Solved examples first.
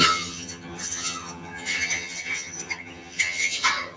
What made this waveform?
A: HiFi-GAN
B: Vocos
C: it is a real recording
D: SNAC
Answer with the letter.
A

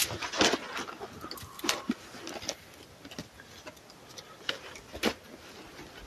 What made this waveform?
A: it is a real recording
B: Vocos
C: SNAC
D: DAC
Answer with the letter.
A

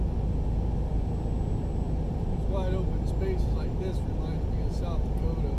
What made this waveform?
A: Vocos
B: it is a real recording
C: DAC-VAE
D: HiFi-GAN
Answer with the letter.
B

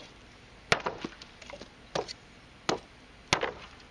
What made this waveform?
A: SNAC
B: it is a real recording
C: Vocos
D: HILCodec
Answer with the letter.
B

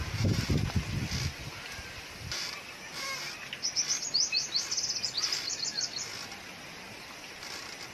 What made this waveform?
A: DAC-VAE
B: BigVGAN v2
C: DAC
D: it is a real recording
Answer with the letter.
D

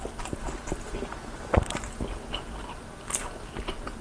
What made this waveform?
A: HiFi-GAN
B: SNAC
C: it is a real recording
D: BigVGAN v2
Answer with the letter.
C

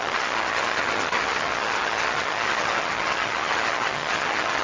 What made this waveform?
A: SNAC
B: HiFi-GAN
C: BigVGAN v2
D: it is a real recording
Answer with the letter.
B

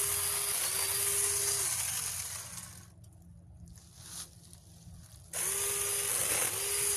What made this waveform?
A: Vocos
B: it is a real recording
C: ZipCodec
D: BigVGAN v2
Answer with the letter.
B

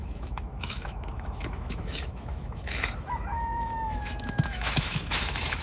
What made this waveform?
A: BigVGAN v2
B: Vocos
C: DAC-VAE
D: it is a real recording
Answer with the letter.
C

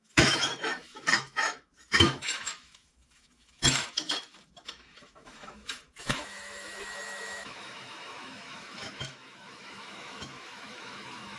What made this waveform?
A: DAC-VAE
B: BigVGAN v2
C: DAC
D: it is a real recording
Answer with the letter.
A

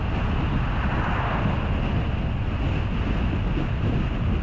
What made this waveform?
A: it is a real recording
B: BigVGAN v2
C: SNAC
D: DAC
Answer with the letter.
A